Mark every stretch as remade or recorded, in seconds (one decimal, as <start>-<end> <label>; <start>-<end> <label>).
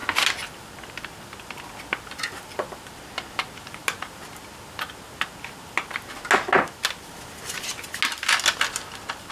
0.0-9.3 recorded